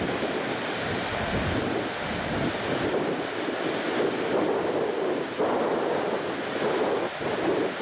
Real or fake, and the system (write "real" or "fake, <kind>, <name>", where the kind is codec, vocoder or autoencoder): real